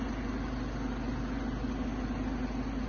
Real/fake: real